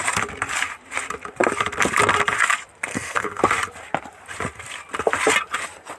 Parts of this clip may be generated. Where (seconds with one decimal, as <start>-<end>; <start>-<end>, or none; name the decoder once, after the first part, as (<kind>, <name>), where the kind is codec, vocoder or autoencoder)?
2.9-3.4 (codec, SNAC)